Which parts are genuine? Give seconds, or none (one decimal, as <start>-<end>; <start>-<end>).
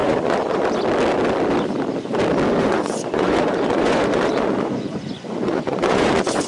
0.7-2.6